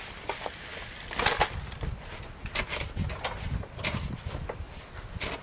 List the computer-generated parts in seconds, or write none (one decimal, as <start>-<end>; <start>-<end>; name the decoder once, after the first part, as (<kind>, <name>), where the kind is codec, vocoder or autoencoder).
none